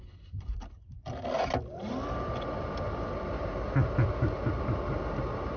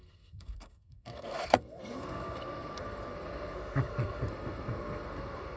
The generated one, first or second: second